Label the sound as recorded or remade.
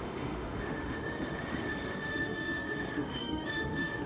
remade